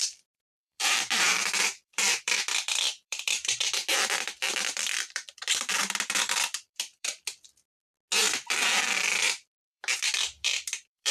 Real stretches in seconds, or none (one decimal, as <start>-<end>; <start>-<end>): 3.8-4.6; 7.8-8.6